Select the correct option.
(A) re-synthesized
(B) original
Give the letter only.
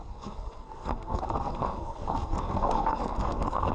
A